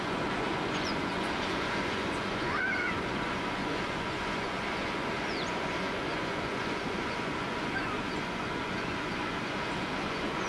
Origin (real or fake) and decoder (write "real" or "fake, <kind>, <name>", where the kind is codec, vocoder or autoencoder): fake, vocoder, Vocos